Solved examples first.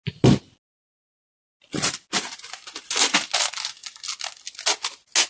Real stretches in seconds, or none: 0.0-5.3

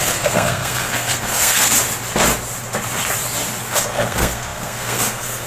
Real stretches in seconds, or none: 1.7-3.7

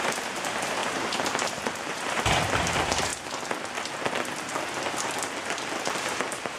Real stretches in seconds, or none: 3.1-5.8

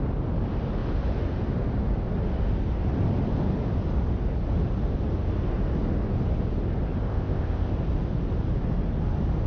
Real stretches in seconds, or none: 0.0-7.1; 7.7-9.5

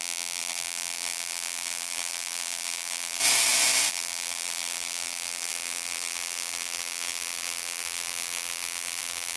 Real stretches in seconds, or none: 3.2-3.9